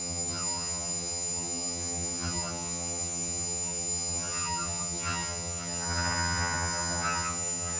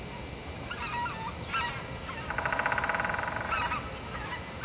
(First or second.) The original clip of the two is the second